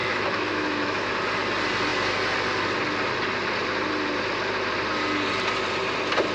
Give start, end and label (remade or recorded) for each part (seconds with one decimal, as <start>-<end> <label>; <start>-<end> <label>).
0.0-1.1 remade; 1.1-6.3 recorded